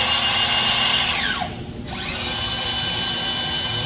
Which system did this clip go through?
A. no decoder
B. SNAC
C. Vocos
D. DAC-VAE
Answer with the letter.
A